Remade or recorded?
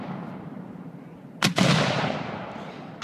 recorded